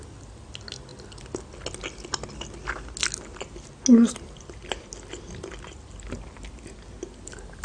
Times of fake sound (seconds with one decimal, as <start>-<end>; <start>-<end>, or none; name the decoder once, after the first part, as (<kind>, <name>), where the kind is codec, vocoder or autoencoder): none